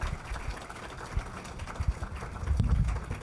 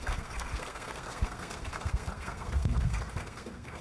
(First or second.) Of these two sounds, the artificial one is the second